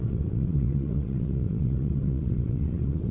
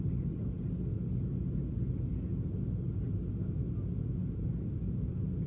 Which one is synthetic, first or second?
first